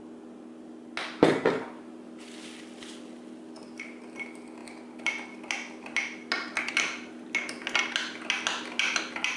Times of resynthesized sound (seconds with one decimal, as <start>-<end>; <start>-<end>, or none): none